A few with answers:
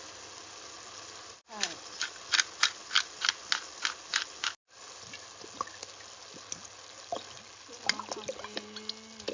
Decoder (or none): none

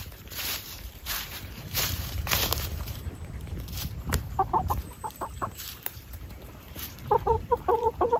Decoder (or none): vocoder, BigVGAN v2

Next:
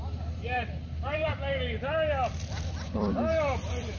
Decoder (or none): vocoder, BigVGAN v2